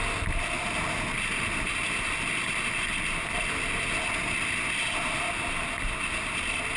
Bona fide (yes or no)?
yes